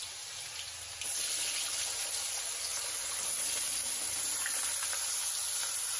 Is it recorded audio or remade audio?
recorded